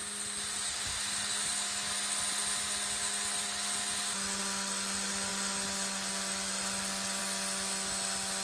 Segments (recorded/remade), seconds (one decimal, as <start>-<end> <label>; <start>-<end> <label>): 0.0-8.4 recorded